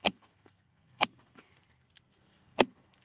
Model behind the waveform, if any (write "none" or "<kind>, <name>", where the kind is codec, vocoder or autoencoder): codec, SNAC